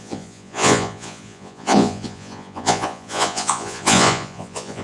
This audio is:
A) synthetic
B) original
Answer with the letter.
A